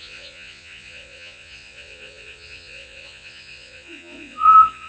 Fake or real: fake